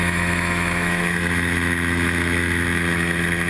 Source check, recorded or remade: remade